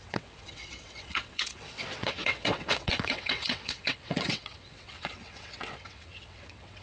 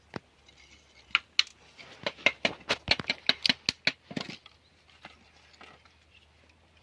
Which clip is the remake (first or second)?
first